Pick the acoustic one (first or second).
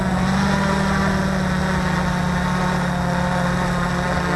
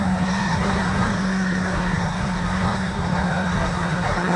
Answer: first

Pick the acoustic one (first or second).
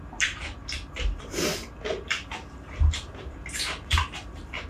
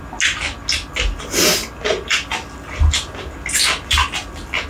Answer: second